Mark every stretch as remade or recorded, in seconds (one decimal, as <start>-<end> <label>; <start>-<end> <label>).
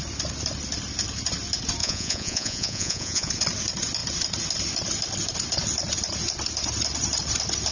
0.0-1.8 recorded; 1.8-3.3 remade; 3.3-7.7 recorded